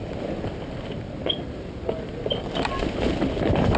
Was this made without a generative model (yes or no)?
yes